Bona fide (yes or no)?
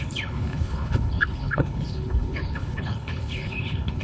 no